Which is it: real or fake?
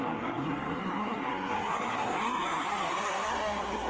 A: fake